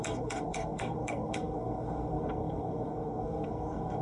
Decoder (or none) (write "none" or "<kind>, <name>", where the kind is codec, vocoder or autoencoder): codec, SNAC